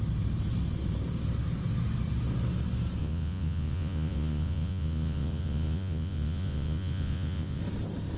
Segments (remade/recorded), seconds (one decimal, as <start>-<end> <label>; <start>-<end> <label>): 0.0-3.0 recorded; 3.0-7.6 remade; 7.6-8.2 recorded